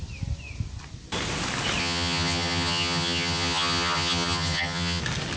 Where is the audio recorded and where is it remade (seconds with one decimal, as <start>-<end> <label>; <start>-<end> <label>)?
0.0-1.8 recorded; 1.8-5.0 remade; 5.0-5.4 recorded